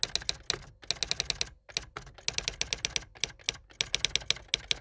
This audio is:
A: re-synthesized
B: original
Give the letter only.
B